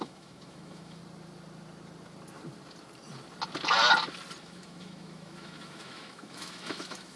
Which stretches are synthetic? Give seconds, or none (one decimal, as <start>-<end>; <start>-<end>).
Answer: 0.0-1.0; 4.4-7.2